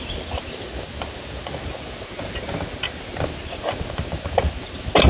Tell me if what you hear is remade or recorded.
recorded